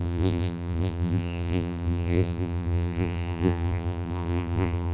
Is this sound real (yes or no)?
no